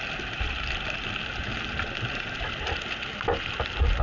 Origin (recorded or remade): recorded